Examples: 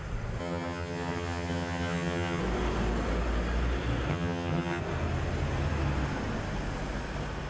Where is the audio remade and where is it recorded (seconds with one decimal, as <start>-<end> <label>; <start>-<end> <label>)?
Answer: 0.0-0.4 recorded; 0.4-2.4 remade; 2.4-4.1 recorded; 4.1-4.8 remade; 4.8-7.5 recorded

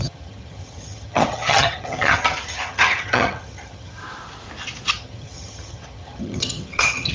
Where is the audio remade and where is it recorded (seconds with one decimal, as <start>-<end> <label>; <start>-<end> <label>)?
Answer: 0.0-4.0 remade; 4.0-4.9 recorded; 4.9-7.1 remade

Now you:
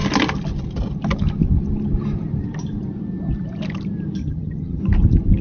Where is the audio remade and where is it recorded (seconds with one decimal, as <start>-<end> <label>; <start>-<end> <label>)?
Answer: 0.0-4.2 recorded; 4.2-4.8 remade; 4.8-5.4 recorded

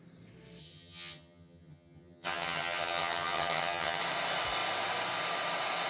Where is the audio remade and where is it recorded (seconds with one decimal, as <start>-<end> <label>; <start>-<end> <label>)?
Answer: 0.0-0.6 recorded; 0.6-4.0 remade; 4.0-5.9 recorded